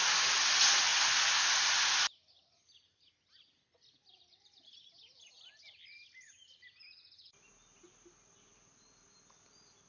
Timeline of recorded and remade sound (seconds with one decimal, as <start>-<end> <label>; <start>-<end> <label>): 0.0-9.9 recorded

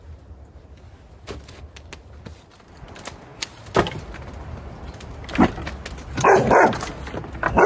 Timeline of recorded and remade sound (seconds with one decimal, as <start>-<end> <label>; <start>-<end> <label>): 0.0-7.7 recorded